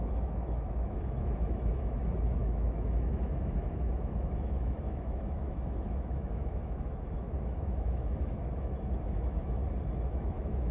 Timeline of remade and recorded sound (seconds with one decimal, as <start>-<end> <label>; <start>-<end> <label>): 0.0-9.6 remade; 9.6-10.1 recorded; 10.1-10.7 remade